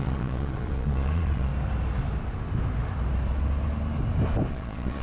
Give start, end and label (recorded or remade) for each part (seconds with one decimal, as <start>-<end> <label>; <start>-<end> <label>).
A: 0.0-1.5 remade; 1.5-4.5 recorded; 4.5-5.0 remade